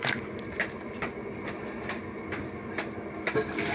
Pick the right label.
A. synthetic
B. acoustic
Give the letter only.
B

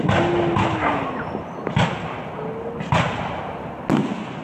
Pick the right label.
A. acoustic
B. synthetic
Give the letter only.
A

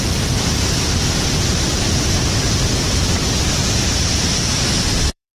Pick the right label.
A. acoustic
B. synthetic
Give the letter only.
B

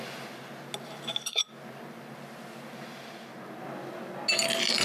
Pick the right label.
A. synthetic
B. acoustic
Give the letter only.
B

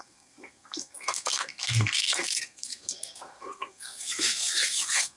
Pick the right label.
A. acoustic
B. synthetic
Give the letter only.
B